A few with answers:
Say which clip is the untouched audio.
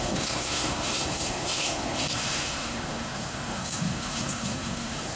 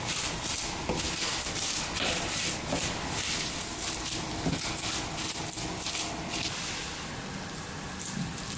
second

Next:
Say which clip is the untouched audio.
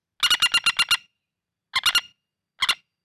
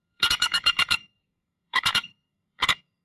first